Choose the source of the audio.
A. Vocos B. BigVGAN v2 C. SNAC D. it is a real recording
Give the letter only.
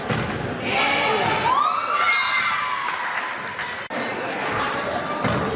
D